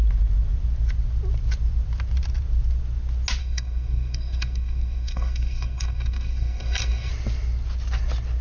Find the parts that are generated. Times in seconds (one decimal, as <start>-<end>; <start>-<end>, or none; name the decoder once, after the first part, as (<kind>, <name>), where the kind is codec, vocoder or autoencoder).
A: 3.4-7.1 (codec, SNAC)